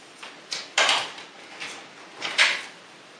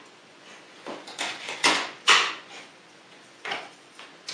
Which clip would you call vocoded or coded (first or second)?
second